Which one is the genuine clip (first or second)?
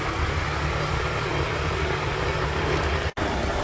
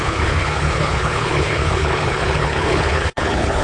first